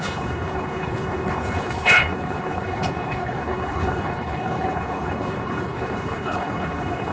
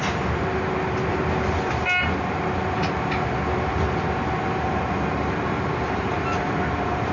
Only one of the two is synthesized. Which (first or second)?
first